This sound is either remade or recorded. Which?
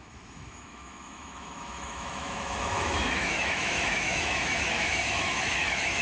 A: remade